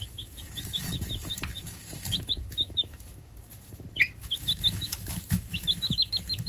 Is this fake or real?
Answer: fake